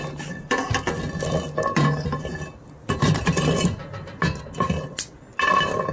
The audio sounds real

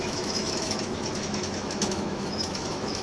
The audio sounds fake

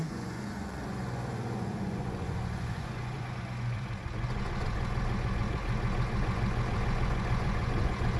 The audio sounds fake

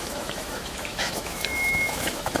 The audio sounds fake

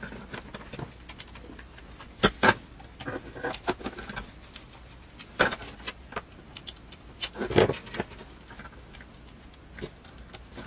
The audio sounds real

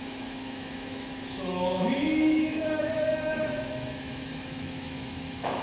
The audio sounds fake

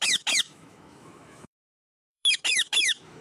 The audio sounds fake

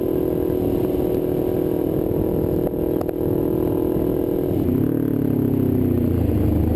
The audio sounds real